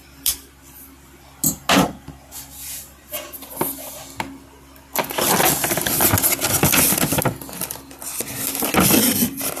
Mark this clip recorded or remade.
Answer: recorded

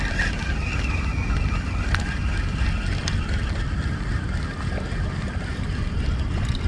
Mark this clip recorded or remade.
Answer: recorded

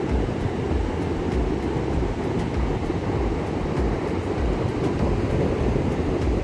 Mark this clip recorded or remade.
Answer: recorded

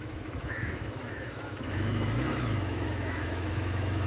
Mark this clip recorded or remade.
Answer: remade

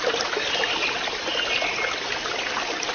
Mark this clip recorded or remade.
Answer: recorded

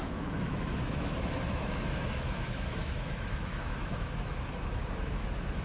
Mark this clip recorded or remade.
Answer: remade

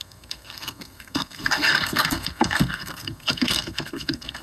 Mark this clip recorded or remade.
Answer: remade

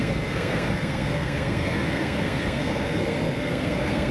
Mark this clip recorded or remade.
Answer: remade